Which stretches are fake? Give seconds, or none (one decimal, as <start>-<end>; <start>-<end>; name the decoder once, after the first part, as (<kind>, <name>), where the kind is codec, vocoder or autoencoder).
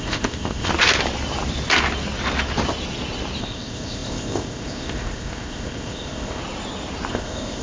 0.0-0.7 (codec, ZipCodec); 3.4-6.4; 7.1-7.6